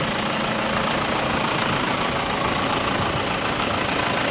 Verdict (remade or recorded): recorded